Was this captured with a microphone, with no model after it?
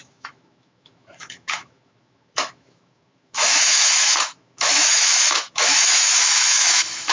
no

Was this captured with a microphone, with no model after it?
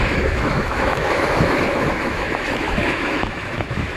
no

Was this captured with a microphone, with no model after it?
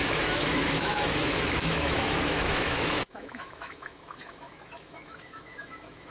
no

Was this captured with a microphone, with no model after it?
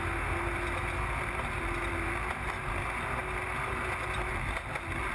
yes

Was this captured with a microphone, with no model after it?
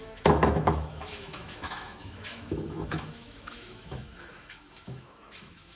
no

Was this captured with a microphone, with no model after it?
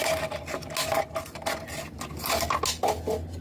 yes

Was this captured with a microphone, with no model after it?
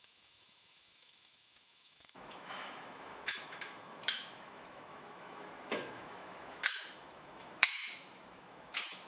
no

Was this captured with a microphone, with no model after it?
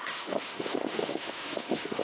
no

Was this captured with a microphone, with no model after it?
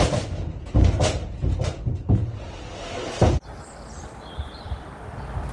yes